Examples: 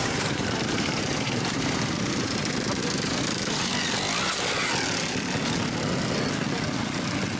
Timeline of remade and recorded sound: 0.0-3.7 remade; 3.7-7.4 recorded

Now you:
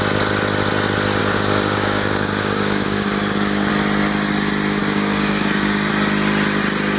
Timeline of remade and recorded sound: 0.0-1.2 recorded; 1.2-3.7 remade; 3.7-4.8 recorded; 4.8-5.9 remade; 5.9-7.0 recorded

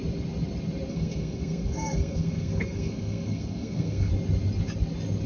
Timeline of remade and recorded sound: 0.0-0.9 recorded; 0.9-4.1 remade; 4.1-5.3 recorded

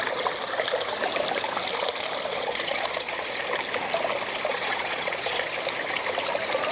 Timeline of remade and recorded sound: 0.0-2.3 recorded; 2.3-3.4 remade; 3.4-4.5 recorded; 4.5-5.5 remade; 5.5-6.7 recorded